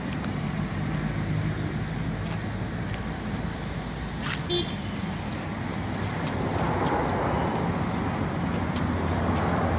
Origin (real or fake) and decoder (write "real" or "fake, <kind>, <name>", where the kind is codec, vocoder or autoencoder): real